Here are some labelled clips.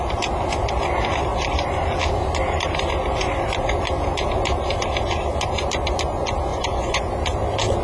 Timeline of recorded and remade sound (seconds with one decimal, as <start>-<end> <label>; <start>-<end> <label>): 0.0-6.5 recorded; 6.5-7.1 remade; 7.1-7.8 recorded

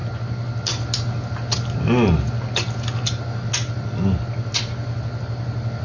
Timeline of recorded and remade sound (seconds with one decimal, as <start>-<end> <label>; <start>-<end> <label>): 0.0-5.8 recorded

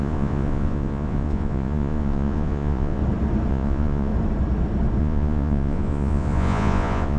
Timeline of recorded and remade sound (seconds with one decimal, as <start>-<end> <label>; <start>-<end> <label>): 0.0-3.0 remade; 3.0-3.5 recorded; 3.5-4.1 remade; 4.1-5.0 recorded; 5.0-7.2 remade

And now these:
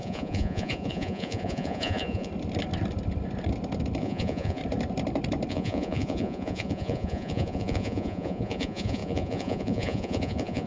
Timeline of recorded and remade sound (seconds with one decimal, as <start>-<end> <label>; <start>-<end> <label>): 0.0-2.3 remade; 2.3-4.0 recorded; 4.0-4.6 remade; 4.6-5.5 recorded; 5.5-10.7 remade